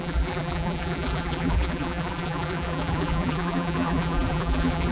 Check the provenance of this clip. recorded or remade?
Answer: remade